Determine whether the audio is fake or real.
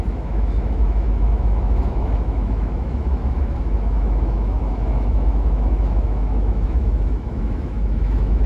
fake